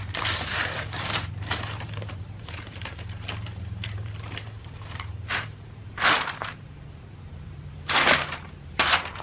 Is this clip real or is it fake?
fake